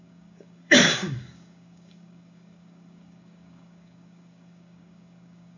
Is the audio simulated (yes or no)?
yes